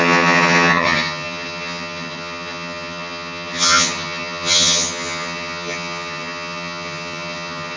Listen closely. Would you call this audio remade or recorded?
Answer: remade